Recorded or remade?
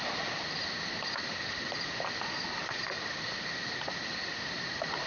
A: recorded